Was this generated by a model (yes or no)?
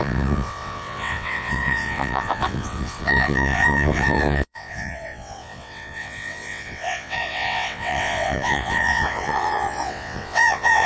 yes